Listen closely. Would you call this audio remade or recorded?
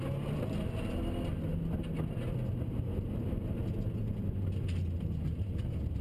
recorded